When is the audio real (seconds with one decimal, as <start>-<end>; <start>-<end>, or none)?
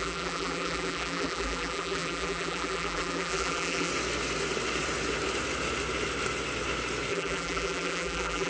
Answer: 3.9-7.1